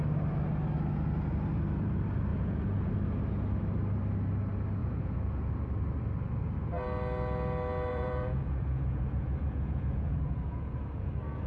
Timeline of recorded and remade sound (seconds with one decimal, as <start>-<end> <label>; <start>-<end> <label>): 0.0-2.3 recorded; 2.3-2.9 remade; 2.9-4.8 recorded; 4.8-5.5 remade; 5.5-7.9 recorded; 7.9-11.1 remade; 11.1-11.5 recorded